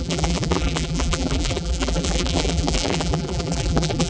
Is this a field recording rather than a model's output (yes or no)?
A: no